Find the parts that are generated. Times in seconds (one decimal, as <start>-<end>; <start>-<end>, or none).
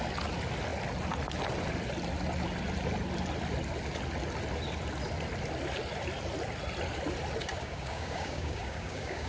7.4-9.3